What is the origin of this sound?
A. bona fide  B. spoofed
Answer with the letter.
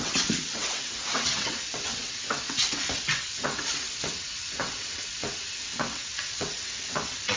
B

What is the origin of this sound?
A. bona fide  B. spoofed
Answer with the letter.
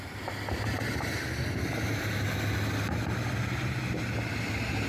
A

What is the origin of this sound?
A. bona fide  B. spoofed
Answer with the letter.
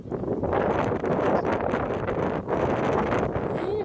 A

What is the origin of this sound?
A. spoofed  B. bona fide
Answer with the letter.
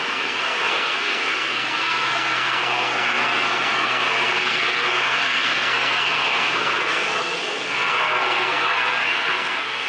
A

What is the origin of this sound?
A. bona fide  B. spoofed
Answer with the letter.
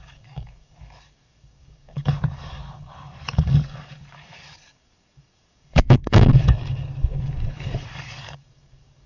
B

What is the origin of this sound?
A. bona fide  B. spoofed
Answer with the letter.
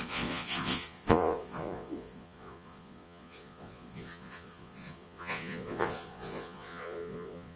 B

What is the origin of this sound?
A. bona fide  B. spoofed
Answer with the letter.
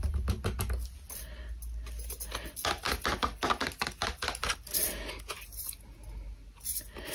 A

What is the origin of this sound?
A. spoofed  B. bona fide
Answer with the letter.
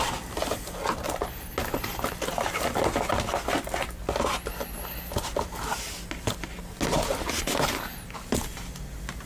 B